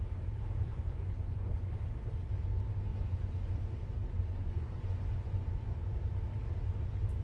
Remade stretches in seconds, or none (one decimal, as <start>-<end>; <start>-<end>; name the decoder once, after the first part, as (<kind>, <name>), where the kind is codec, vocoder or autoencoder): 0.7-1.7 (vocoder, Vocos); 2.9-3.5; 4.0-5.9